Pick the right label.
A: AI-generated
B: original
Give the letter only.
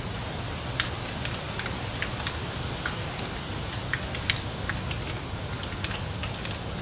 B